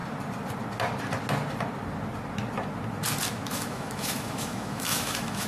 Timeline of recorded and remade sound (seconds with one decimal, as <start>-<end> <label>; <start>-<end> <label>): 0.0-3.3 recorded; 3.3-5.5 remade